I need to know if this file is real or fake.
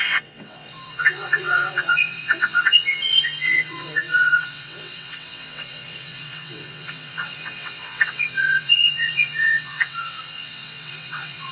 fake